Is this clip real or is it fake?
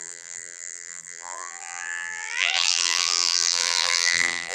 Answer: fake